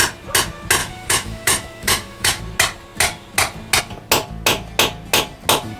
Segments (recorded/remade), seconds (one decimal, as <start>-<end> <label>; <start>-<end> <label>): 0.0-0.8 recorded; 0.8-2.4 remade; 2.4-5.8 recorded